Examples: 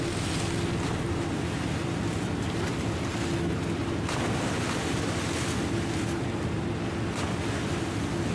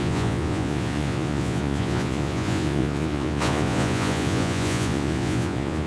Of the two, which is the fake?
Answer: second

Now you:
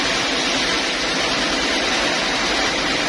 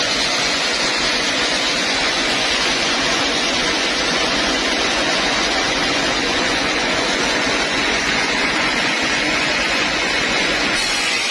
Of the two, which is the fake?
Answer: second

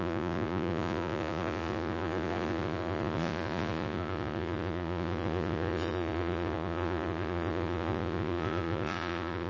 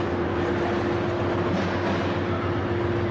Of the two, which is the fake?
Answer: first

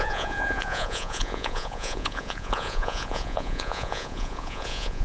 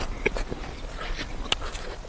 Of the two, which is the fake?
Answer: first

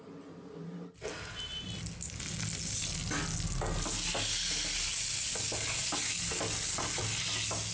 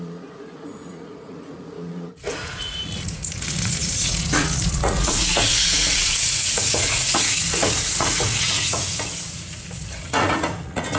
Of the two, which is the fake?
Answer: second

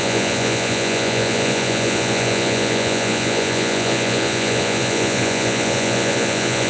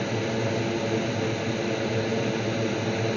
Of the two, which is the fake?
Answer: first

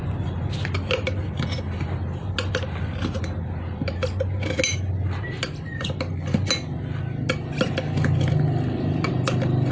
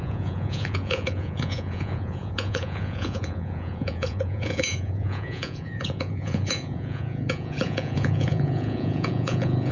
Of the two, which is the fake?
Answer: second